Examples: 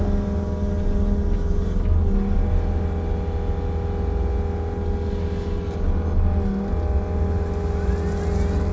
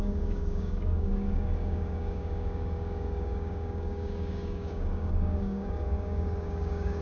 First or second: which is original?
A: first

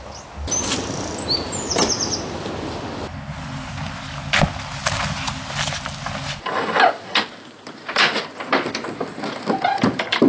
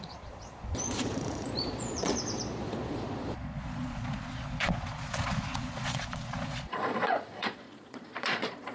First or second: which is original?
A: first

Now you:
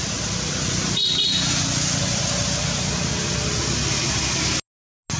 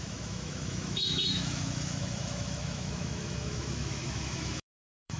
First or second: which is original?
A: first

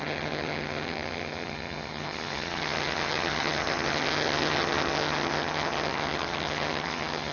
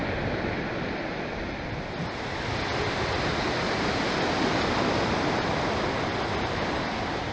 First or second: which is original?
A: second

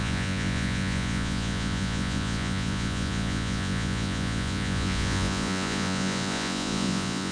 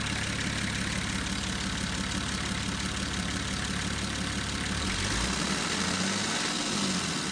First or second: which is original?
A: second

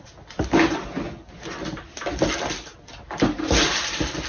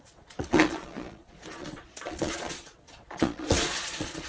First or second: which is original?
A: first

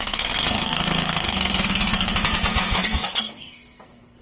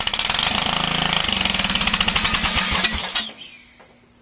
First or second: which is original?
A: second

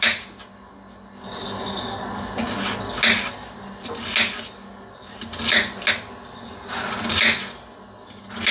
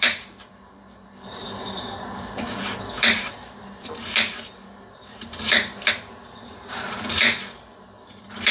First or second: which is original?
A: first